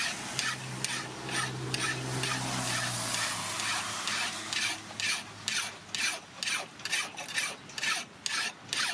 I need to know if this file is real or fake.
real